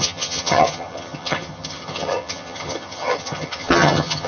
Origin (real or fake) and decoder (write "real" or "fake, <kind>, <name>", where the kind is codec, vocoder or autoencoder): fake, vocoder, HiFi-GAN